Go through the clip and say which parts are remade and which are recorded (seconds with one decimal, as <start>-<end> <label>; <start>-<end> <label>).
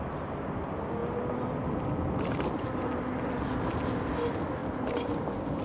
0.0-5.6 recorded